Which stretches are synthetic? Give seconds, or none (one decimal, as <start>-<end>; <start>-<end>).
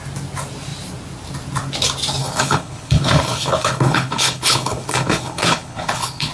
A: 2.2-6.3